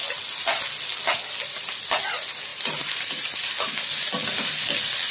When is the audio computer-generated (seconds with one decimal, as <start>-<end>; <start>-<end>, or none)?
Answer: 2.5-3.5